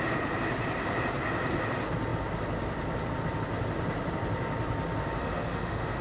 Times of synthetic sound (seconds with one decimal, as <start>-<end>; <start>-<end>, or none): 5.2-6.0